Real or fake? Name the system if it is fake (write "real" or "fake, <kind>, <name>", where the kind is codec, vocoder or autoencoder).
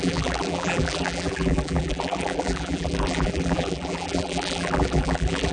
fake, vocoder, BigVGAN v2